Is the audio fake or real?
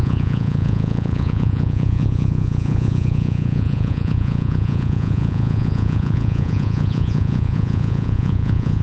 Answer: fake